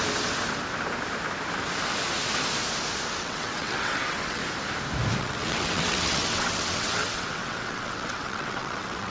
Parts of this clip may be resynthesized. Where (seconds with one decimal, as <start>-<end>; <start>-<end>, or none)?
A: 3.2-4.4; 5.2-9.1

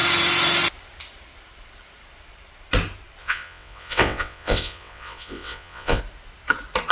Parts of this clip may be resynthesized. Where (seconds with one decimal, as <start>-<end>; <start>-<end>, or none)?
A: 3.2-6.0

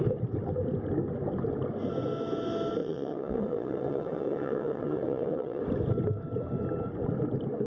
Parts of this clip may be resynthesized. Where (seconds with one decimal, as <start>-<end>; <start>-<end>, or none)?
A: 2.8-5.6

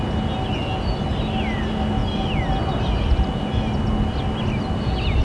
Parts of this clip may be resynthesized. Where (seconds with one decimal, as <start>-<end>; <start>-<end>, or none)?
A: none

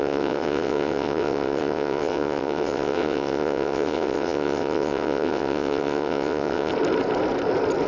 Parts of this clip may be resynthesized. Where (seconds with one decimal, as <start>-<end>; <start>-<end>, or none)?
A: 0.0-6.7

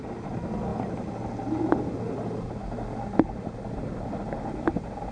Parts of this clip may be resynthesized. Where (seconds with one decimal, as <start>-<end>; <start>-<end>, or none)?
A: none

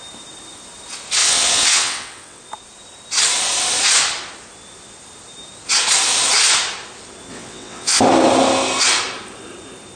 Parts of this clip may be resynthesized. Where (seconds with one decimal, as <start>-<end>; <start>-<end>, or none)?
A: 1.2-2.4; 7.3-8.0